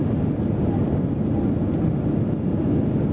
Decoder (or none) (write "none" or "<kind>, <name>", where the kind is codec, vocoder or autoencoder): none